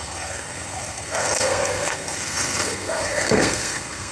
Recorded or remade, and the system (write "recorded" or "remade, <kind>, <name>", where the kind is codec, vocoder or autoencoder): remade, codec, SNAC